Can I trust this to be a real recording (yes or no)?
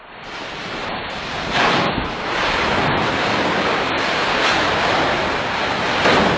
yes